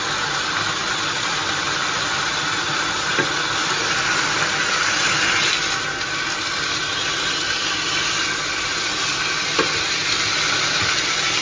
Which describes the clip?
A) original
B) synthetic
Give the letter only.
A